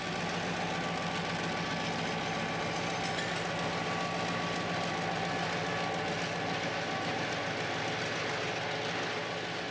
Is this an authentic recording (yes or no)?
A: yes